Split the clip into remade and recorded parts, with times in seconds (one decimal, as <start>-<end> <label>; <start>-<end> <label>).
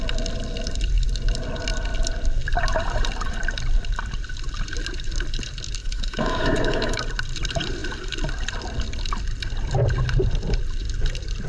0.0-5.8 recorded; 5.8-7.0 remade; 7.0-11.5 recorded